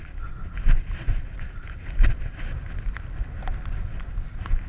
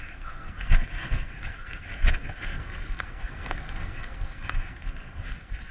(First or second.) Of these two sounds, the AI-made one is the second